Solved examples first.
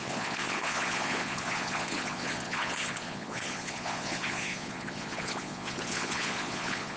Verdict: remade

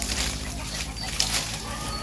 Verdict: recorded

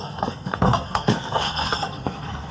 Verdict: remade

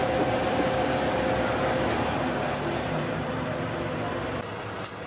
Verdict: recorded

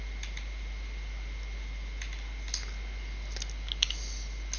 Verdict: recorded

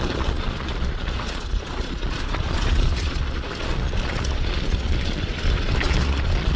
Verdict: remade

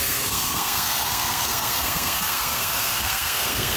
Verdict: remade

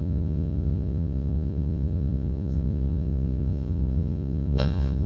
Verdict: remade